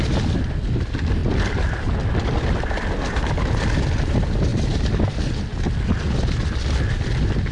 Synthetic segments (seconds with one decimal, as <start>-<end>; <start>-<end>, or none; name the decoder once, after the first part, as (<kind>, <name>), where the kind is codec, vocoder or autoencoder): none